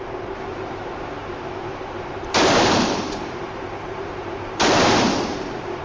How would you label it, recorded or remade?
remade